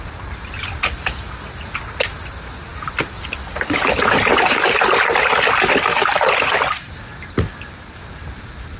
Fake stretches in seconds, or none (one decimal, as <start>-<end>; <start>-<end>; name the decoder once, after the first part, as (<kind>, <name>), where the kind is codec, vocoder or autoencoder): none

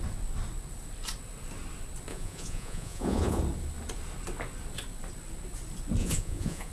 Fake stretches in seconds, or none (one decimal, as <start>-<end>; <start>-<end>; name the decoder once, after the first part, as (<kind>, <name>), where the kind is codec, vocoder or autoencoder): 2.1-3.4 (vocoder, Vocos); 6.0-6.7

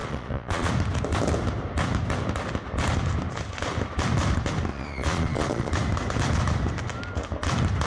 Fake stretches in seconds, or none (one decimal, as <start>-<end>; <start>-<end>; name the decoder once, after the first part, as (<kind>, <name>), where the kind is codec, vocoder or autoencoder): 0.0-0.7 (vocoder, Vocos); 4.7-5.7

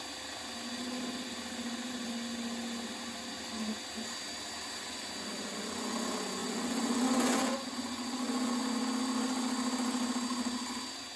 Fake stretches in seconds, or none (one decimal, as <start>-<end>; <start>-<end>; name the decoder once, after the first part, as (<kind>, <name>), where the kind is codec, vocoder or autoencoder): 4.8-5.9 (vocoder, Vocos); 6.4-8.6

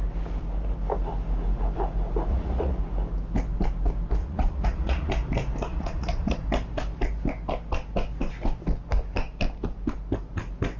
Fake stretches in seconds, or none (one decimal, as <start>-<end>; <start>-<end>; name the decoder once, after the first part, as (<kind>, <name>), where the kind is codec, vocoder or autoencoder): 2.3-2.8 (vocoder, Vocos); 4.2-5.1; 5.7-6.4

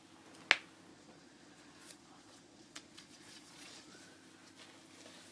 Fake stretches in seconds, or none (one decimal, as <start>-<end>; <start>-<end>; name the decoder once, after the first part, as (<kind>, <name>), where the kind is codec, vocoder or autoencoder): 0.9-4.0 (vocoder, Vocos)

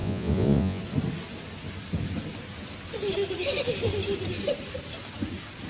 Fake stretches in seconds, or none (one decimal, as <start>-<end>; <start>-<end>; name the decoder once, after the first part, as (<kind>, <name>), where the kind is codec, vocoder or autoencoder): 0.0-0.8 (vocoder, Vocos)

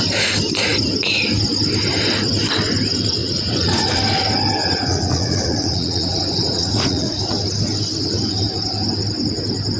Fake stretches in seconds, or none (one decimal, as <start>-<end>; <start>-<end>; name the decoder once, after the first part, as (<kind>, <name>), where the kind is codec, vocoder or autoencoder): 3.2-3.9 (vocoder, Vocos); 4.6-7.2